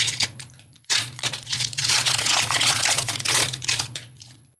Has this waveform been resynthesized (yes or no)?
yes